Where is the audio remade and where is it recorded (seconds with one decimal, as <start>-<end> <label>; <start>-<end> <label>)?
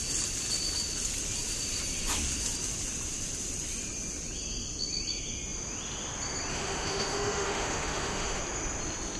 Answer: 0.0-6.5 recorded; 6.5-8.4 remade; 8.4-9.2 recorded